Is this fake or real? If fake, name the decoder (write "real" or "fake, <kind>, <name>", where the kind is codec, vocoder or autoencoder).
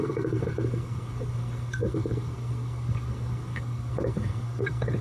fake, codec, SNAC